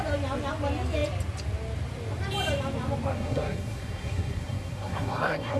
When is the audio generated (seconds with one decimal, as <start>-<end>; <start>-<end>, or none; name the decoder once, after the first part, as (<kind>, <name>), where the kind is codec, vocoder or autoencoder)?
3.1-5.6 (codec, SNAC)